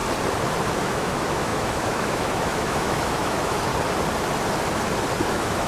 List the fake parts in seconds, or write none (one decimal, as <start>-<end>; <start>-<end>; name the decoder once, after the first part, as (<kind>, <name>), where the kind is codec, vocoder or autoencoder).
0.8-3.7 (autoencoder, DAC-VAE); 5.3-5.7